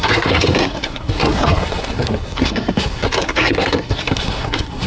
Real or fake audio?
fake